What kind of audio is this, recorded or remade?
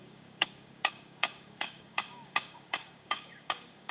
remade